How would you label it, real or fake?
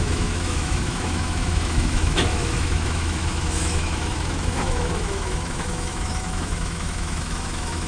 fake